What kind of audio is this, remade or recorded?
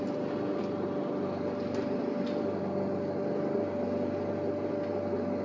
recorded